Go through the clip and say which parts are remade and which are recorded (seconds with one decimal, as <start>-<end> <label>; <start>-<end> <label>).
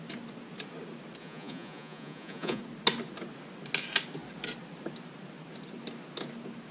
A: 0.0-1.2 recorded; 1.2-2.6 remade; 2.6-6.7 recorded